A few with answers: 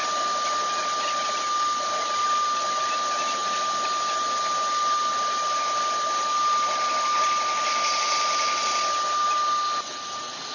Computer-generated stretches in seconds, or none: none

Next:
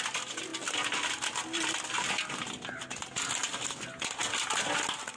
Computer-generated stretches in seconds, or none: none

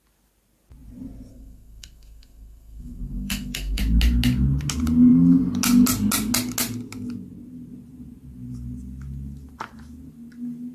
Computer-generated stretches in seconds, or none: 1.3-3.8

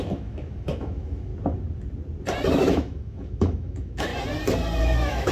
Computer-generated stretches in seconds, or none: 0.0-1.3; 2.6-4.1; 4.8-5.3

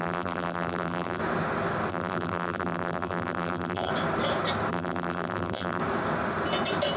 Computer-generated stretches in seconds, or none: 0.0-1.2; 1.9-3.9; 4.7-5.8

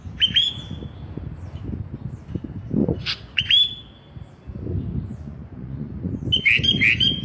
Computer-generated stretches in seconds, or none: 2.8-3.4; 5.1-6.1

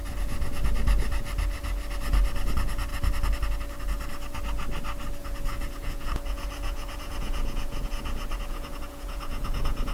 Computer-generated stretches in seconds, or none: 5.2-9.9

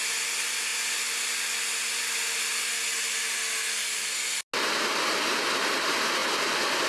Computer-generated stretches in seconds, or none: none